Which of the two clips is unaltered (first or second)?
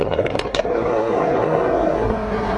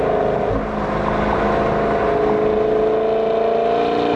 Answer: second